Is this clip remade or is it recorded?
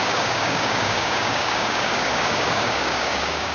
remade